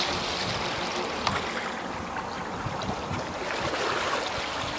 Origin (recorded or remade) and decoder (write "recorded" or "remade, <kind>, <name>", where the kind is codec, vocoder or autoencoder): recorded